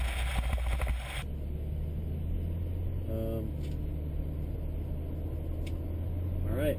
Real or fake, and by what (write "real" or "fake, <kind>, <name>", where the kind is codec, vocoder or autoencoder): real